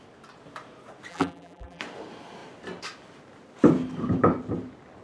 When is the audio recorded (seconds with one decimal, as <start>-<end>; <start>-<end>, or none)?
0.0-1.1; 1.8-5.0